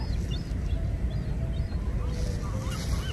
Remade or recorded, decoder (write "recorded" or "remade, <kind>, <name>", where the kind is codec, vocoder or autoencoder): recorded